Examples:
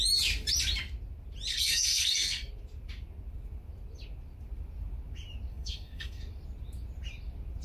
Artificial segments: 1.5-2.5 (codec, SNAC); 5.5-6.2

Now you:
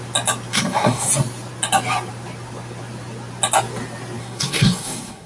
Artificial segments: 0.5-1.1 (codec, SNAC); 4.2-5.3

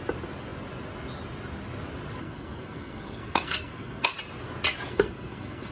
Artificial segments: 2.2-4.1 (codec, SNAC); 4.9-5.7

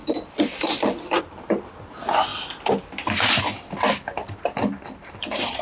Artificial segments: none

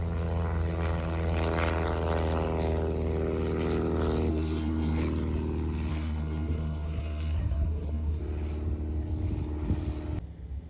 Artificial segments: 4.3-5.0 (codec, SNAC); 5.9-8.2

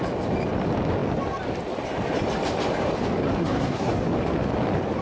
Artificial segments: 3.4-3.9 (codec, SNAC)

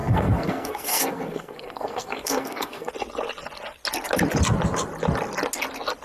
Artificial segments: 0.0-2.9 (codec, SNAC)

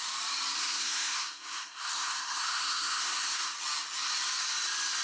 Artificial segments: 0.6-3.5 (codec, SNAC)